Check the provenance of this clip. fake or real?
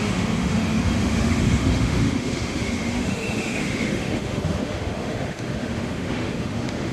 fake